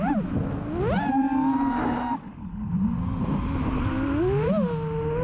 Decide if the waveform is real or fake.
real